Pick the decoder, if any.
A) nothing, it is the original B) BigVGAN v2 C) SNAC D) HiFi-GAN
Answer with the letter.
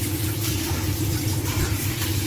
B